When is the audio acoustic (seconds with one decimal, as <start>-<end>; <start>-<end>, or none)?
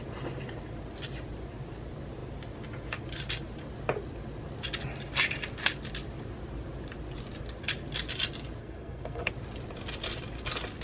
0.0-8.6; 9.3-10.8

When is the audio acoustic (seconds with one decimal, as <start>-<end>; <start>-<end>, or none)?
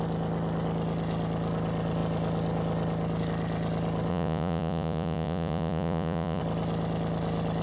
0.0-4.1; 6.4-7.6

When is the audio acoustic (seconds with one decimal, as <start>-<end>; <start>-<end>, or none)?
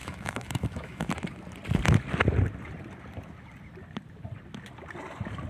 1.1-5.5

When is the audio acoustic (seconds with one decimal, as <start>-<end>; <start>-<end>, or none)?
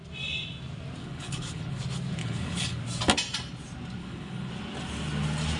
0.0-1.0; 1.8-2.2; 2.8-4.0; 4.5-5.6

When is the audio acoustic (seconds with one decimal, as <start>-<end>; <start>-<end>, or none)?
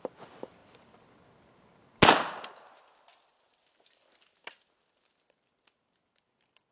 0.0-6.7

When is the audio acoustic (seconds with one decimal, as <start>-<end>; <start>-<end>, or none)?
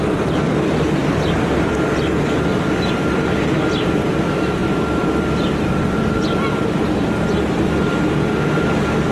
0.0-9.1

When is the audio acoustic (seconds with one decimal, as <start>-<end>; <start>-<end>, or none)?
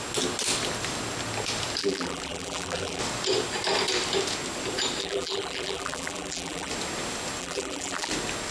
0.0-1.8; 3.0-5.0; 6.7-7.4; 8.1-8.5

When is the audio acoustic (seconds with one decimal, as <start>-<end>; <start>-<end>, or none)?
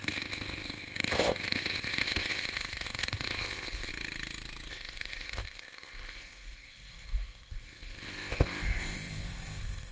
3.9-4.7